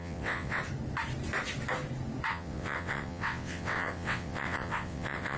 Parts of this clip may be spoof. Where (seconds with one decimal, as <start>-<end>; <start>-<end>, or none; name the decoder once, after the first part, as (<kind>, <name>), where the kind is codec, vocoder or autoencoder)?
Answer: 0.0-0.6 (vocoder, WaveNeXt); 2.3-5.4